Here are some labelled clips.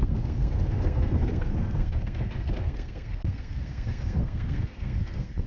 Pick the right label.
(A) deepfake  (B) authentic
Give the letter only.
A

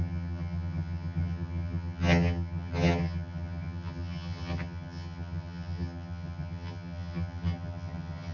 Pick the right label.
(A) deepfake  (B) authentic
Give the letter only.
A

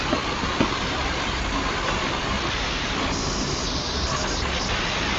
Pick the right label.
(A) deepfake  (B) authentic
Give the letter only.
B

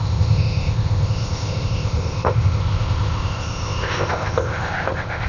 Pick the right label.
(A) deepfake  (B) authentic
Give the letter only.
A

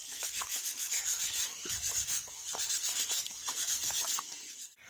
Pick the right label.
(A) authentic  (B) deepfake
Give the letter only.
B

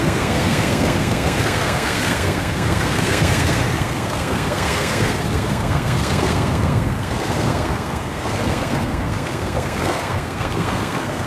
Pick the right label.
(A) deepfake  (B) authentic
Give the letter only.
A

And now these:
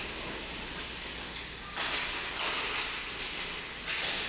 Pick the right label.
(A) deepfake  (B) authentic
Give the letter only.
B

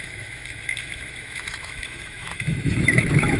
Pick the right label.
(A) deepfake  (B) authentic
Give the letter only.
A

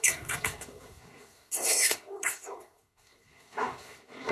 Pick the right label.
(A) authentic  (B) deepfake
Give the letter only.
B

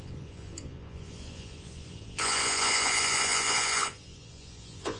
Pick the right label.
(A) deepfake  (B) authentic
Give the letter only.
A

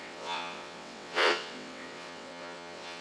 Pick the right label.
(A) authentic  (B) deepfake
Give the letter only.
B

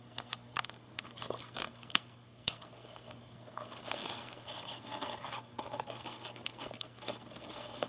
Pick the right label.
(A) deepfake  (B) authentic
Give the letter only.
A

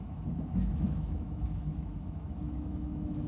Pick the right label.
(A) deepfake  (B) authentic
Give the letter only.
A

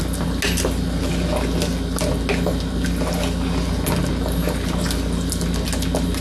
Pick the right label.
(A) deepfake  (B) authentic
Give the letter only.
B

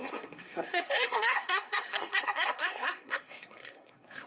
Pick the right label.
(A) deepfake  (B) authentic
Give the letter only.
A